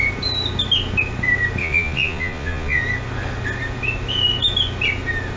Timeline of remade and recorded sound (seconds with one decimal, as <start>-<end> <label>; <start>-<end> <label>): 0.0-1.6 recorded; 1.6-2.8 remade; 2.8-5.4 recorded